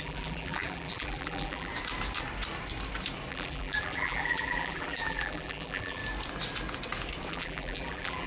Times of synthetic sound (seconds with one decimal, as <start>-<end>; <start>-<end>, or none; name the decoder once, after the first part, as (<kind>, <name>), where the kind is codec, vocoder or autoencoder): 0.0-1.7 (vocoder, BigVGAN v2); 3.3-6.0; 7.3-8.3

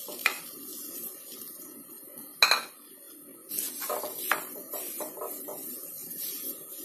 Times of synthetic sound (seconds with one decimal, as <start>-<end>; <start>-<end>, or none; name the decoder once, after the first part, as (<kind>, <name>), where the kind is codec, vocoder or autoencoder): 0.0-2.0 (vocoder, BigVGAN v2); 4.1-6.8

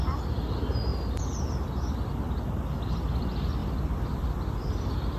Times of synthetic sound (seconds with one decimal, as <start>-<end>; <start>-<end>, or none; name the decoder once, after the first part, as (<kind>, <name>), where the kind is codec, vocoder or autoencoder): 0.9-2.1 (vocoder, BigVGAN v2); 3.6-5.2

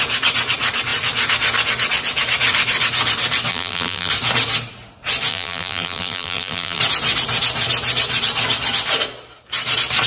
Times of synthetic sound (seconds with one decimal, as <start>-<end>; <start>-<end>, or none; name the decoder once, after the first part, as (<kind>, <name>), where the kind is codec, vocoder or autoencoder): 3.5-4.1 (vocoder, BigVGAN v2); 5.3-6.8

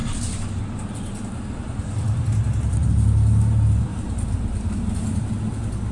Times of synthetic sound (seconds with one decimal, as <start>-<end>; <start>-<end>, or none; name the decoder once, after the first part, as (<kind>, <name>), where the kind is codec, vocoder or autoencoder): 0.0-2.9 (vocoder, BigVGAN v2); 3.9-4.9

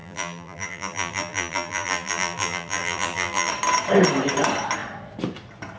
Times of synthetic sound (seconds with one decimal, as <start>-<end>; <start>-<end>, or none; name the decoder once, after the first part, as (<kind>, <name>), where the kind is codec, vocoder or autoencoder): 0.0-3.5 (vocoder, BigVGAN v2)